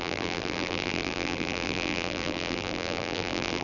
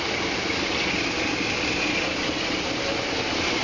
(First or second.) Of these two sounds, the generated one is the first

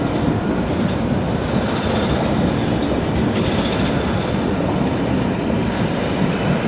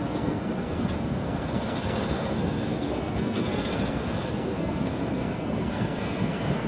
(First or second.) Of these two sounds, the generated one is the second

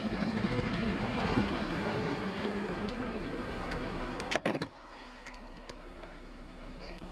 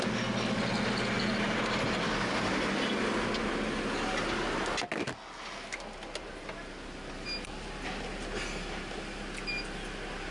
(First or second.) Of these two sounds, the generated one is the first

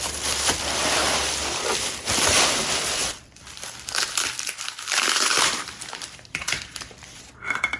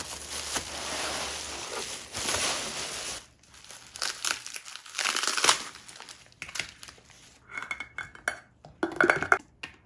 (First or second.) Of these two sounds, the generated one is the first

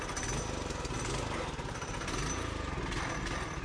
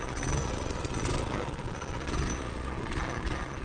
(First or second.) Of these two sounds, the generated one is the second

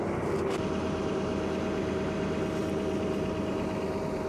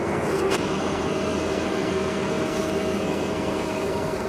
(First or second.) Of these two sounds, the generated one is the second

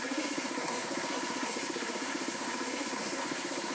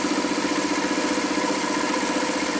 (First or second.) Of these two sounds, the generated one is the first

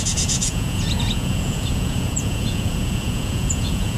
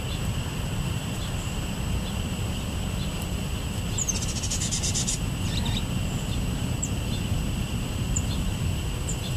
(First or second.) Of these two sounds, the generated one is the first